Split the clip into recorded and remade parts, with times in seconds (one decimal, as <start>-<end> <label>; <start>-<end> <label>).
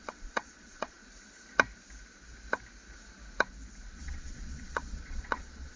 0.0-1.0 remade; 1.0-3.9 recorded; 3.9-5.8 remade